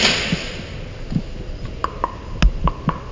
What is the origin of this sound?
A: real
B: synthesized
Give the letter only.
A